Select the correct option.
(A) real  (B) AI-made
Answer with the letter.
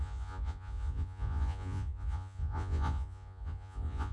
B